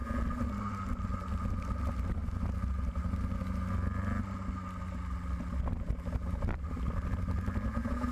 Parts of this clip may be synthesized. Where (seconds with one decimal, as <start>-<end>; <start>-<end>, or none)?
none

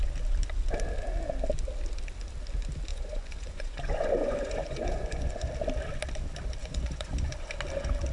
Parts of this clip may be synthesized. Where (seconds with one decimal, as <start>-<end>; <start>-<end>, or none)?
2.9-5.5; 6.6-7.5

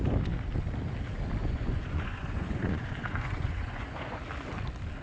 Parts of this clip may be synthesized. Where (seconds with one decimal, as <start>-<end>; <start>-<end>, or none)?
1.4-4.2

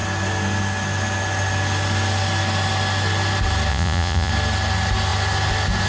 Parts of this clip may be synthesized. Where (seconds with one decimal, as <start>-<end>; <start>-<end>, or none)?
3.7-4.3

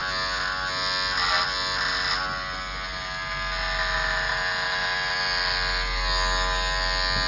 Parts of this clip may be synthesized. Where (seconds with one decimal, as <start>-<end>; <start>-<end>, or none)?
none

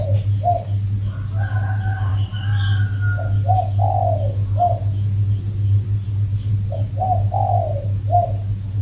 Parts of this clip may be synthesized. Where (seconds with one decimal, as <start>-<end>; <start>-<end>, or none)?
none